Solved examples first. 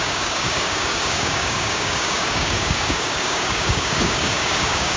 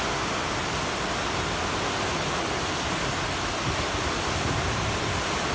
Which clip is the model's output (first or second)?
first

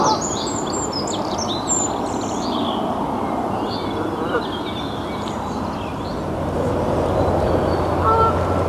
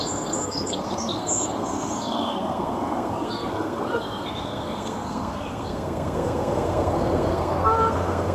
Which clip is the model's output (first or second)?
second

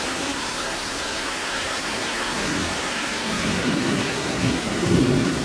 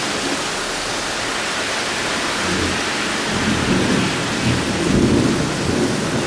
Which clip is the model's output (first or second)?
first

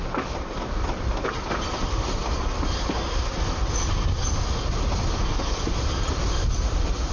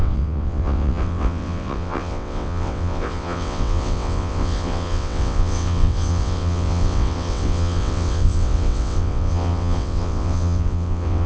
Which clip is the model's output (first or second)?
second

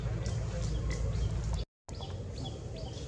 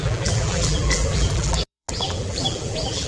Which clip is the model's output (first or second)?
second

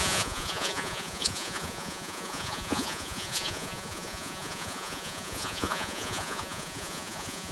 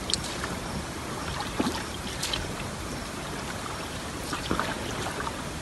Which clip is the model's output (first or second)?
first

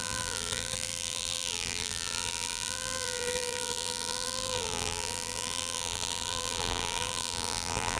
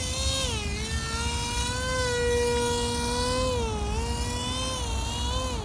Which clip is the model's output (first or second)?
first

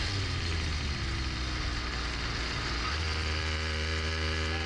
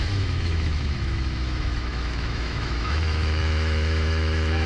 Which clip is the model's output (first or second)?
second